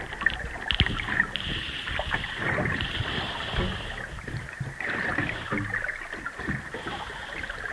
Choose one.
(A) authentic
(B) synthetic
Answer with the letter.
B